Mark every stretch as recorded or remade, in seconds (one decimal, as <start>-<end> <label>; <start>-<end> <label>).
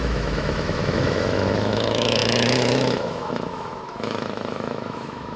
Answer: 0.0-5.4 remade